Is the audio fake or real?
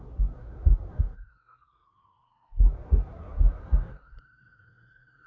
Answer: fake